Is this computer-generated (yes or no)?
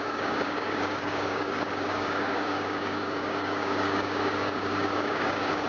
yes